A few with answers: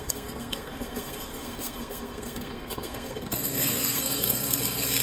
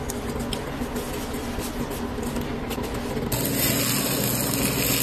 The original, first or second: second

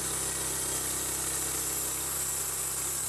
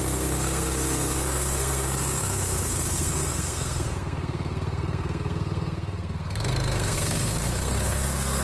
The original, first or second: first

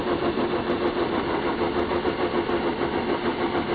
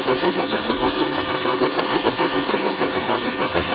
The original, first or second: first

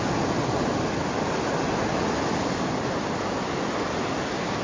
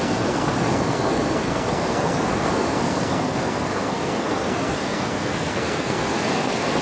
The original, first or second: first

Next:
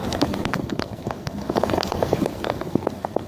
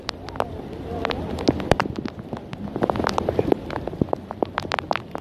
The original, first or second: second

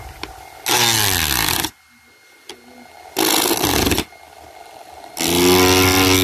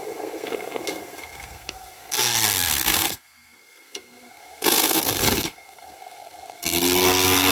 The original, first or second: first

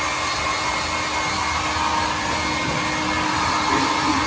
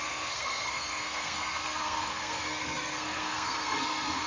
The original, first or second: first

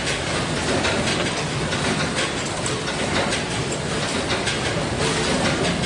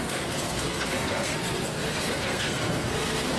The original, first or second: first